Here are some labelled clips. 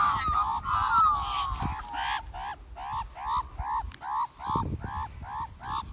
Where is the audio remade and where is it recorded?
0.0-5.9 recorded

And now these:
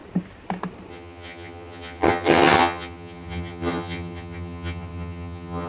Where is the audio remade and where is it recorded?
0.0-0.9 recorded; 0.9-5.7 remade

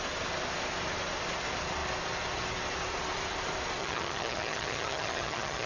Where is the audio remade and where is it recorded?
0.0-3.8 recorded; 3.8-5.7 remade